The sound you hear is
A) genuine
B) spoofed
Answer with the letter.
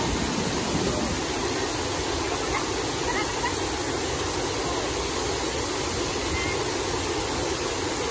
A